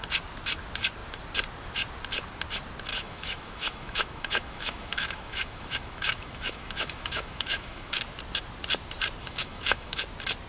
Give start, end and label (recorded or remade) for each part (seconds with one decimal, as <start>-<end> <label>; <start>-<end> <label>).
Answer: 0.0-2.9 recorded; 2.9-8.0 remade; 8.0-9.2 recorded; 9.2-10.0 remade; 10.0-10.5 recorded